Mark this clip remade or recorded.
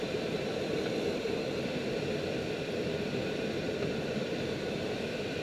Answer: remade